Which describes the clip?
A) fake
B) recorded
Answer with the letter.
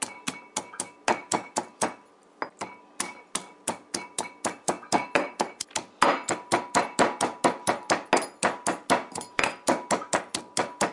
B